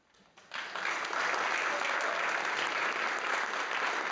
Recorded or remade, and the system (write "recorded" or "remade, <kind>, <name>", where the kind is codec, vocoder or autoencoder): recorded